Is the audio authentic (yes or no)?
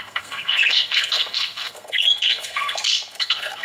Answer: no